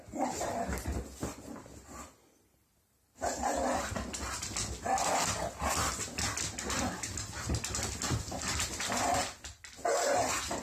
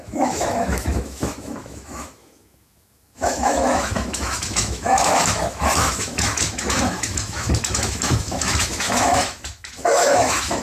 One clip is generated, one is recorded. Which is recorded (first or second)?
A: first